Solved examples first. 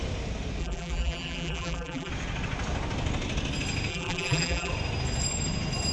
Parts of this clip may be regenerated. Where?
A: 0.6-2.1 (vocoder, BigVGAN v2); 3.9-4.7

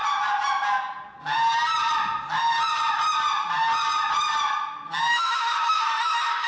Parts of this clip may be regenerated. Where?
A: 5.1-6.5 (autoencoder, DAC-VAE)

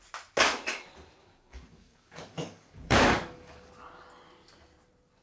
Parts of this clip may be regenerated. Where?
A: 1.2-3.7 (codec, DAC)